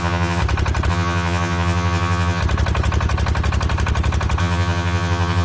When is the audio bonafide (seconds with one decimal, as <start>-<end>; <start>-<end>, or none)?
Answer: 0.4-0.9; 2.4-4.4